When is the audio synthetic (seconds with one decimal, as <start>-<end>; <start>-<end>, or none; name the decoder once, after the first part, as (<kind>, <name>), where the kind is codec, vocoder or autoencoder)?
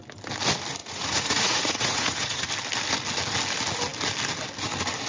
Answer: 0.8-2.5 (vocoder, Vocos)